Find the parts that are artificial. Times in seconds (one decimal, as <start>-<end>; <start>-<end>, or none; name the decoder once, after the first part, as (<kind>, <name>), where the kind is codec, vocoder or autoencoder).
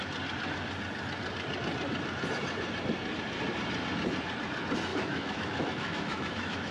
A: 4.9-6.7 (autoencoder, DAC-VAE)